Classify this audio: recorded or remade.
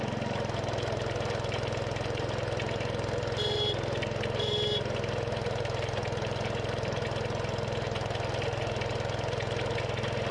recorded